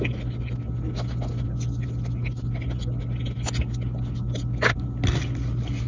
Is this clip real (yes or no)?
yes